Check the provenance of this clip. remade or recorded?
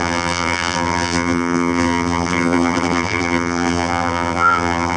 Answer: remade